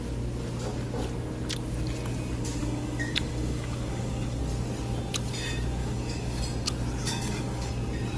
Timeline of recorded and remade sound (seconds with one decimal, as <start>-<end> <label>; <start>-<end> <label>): 0.0-2.6 recorded; 2.6-4.4 remade; 4.4-5.8 recorded; 5.8-6.4 remade; 6.4-7.0 recorded; 7.0-7.7 remade; 7.7-8.2 recorded

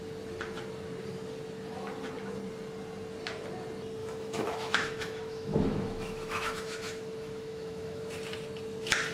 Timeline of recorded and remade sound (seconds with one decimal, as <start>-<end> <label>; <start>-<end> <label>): 0.0-4.0 recorded; 4.0-8.1 remade; 8.1-9.1 recorded

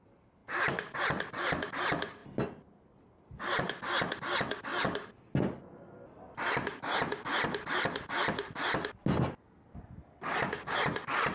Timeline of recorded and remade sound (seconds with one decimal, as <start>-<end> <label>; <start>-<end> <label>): 0.0-11.3 recorded

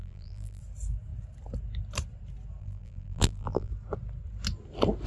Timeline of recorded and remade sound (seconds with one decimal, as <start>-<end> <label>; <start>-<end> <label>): 0.0-0.6 remade; 0.6-2.6 recorded; 2.6-3.7 remade; 3.7-5.1 recorded